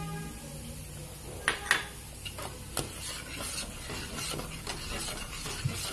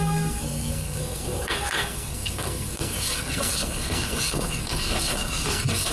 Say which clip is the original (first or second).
first